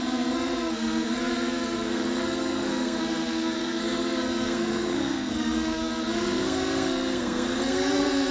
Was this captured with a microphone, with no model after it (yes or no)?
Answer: no